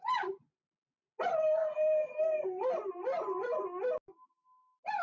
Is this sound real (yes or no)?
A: yes